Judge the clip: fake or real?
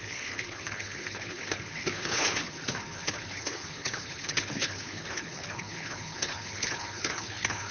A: fake